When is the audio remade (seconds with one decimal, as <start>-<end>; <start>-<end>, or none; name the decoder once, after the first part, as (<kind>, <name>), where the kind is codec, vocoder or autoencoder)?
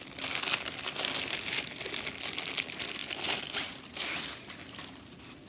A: none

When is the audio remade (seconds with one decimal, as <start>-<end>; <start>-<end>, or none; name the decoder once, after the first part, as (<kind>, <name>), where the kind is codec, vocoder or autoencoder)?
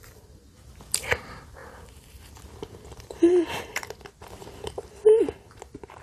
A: 0.0-6.0 (vocoder, BigVGAN v2)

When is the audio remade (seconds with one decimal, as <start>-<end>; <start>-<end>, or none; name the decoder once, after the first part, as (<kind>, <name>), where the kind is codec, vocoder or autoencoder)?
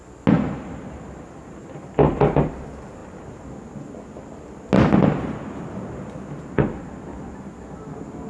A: none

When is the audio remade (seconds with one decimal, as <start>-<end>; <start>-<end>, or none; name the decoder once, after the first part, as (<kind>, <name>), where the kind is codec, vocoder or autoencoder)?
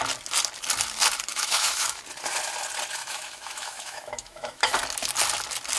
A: 1.3-2.0 (autoencoder, DAC-VAE); 3.0-4.7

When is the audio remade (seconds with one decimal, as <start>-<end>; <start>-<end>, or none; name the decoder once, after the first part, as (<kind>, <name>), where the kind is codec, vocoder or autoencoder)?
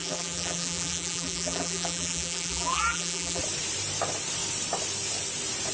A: 0.0-3.4 (vocoder, BigVGAN v2)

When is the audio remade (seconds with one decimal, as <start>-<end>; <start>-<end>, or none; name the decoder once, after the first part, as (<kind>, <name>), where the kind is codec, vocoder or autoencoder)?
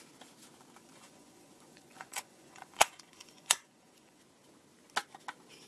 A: 0.8-4.2 (vocoder, Vocos)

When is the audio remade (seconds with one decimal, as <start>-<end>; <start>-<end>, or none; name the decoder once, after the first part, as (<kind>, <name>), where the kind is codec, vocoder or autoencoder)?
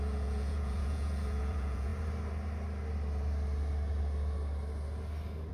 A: 0.0-1.9 (vocoder, Vocos)